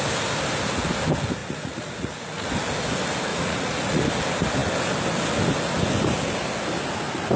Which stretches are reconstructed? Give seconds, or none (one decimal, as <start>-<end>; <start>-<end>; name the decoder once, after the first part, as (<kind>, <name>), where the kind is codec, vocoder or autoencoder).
1.4-2.5 (vocoder, Vocos); 3.3-4.0